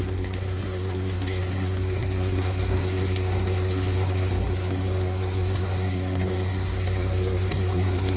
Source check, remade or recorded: remade